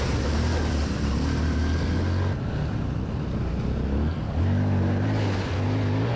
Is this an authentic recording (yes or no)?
yes